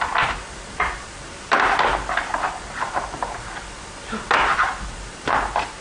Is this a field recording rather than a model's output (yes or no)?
yes